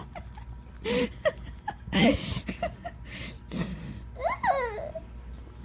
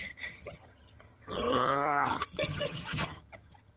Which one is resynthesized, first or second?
second